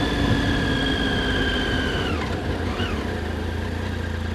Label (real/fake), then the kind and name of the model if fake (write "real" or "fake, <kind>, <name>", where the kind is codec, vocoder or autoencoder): real